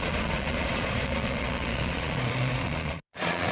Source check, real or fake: fake